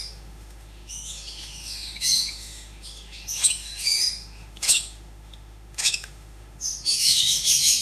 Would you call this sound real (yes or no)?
no